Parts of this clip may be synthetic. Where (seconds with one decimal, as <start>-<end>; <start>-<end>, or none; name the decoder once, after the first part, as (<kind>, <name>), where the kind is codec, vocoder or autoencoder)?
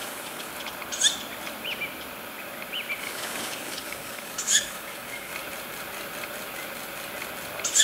0.0-0.5 (codec, DAC); 3.0-5.3